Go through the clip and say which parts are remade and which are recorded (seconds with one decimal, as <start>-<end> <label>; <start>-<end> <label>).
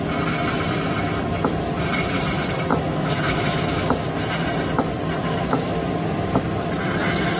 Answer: 0.0-2.7 recorded; 2.7-3.9 remade; 3.9-7.4 recorded